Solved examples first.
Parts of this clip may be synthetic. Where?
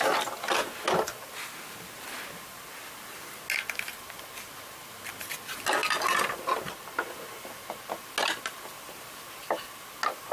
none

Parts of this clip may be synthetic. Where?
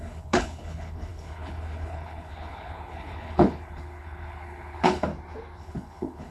0.0-5.1; 5.6-6.3